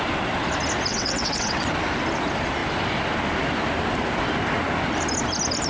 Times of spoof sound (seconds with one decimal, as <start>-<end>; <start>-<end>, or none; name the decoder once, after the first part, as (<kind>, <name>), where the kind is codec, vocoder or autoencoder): 0.9-1.7 (vocoder, WaveNeXt)